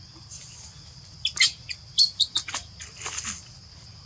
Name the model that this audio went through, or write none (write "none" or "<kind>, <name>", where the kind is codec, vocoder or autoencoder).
none